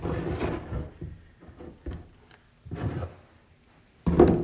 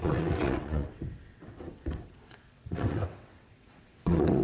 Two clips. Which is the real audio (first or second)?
first